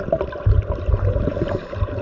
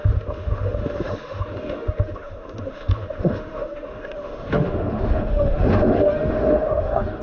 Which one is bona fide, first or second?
first